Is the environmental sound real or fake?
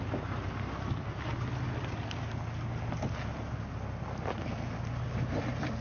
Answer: real